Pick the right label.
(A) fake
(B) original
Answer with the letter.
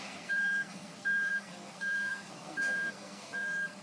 A